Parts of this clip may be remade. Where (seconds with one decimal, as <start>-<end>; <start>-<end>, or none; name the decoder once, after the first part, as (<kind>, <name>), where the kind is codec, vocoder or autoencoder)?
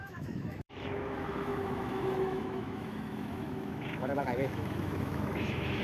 0.0-5.8 (autoencoder, DAC-VAE)